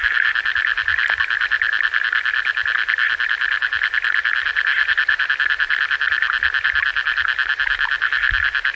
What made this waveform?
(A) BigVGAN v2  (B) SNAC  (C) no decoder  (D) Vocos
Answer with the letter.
C